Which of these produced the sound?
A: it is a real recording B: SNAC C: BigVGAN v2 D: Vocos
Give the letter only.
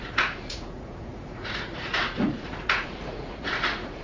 D